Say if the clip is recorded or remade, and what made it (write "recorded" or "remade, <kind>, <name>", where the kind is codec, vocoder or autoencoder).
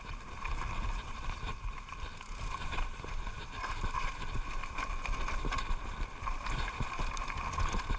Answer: recorded